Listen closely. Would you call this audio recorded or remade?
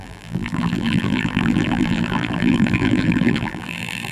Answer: remade